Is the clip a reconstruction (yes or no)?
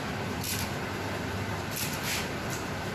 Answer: no